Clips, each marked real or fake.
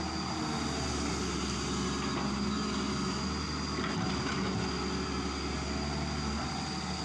real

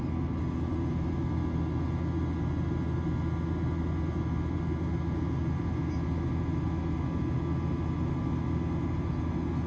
real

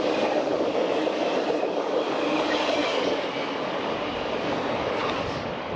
fake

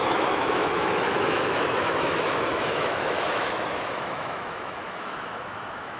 fake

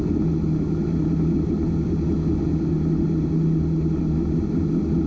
real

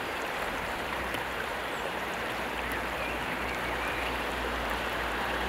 fake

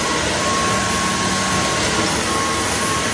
real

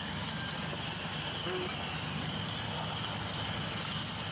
real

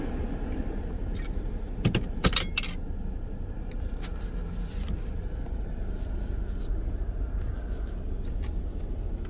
real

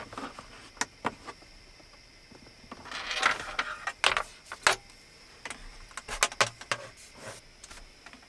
real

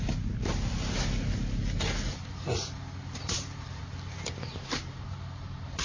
real